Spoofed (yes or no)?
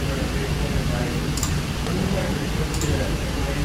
no